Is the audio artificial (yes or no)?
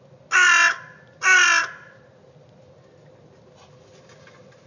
no